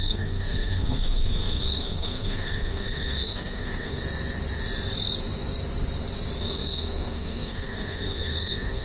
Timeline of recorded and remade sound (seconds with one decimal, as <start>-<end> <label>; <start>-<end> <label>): 0.0-4.0 remade; 4.0-6.4 recorded; 6.4-8.8 remade